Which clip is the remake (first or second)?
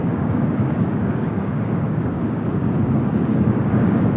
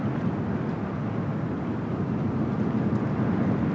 first